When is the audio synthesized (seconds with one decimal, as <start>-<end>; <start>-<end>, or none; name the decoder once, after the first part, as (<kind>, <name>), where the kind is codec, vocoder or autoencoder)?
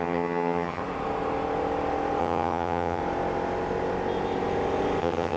0.0-0.8 (vocoder, HiFi-GAN); 2.2-3.0; 5.0-5.4